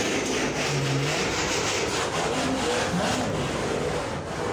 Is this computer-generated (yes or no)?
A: no